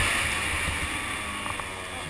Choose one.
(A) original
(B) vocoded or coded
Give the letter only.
A